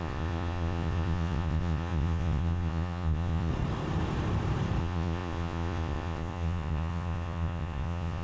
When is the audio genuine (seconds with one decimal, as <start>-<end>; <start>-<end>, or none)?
3.5-4.8